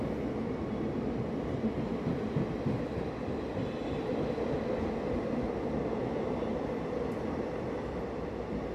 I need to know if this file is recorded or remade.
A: recorded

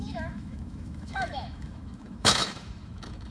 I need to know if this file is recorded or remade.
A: remade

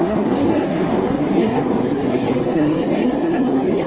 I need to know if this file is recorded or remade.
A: remade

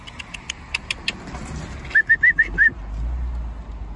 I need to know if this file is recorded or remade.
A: recorded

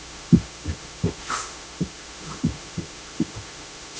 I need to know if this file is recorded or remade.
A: remade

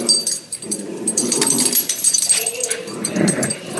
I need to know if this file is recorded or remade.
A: remade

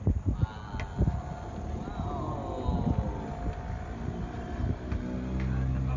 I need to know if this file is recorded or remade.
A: recorded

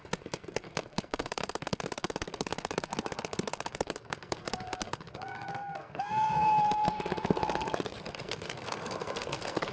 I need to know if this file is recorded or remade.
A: remade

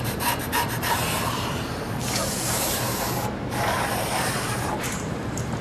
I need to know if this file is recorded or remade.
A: remade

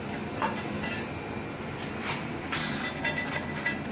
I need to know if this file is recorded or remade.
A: recorded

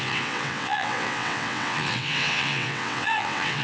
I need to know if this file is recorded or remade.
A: remade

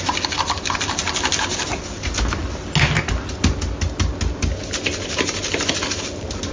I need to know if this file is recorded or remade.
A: recorded